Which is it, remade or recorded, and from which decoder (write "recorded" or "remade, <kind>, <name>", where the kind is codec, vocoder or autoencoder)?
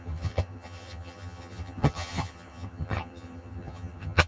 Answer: remade, vocoder, HiFi-GAN